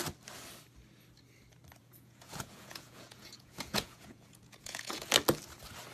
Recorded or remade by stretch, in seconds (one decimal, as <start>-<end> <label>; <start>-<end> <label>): 0.0-1.8 recorded; 1.8-5.1 remade; 5.1-5.9 recorded